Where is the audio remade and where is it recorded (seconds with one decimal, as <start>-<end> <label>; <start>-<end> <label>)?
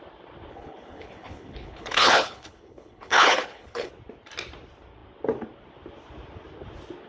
0.0-0.5 recorded; 0.5-3.9 remade; 3.9-7.1 recorded